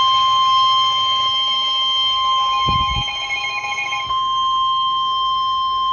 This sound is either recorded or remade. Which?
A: remade